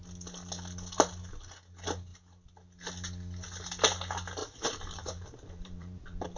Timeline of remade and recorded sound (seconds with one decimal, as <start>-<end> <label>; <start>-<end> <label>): 0.0-4.4 recorded; 4.4-6.4 remade